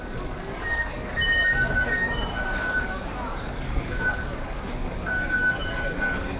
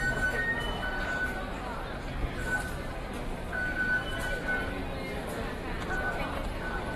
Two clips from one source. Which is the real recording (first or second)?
second